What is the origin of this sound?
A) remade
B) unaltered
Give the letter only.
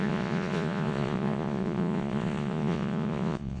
A